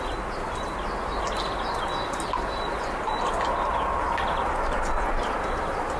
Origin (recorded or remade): recorded